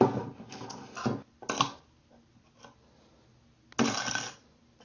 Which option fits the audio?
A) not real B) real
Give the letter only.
B